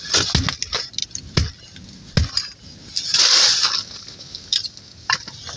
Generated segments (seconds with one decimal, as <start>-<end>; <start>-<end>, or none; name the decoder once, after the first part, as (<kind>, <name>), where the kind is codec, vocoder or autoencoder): none